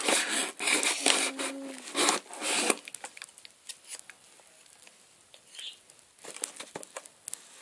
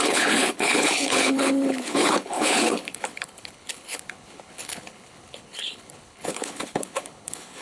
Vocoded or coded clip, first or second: second